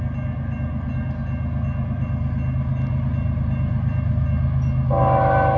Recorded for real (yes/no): yes